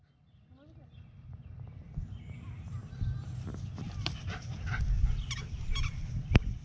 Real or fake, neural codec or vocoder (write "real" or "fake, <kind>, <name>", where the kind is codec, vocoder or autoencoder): real